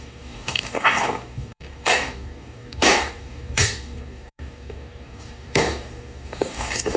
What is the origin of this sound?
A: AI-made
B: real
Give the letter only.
A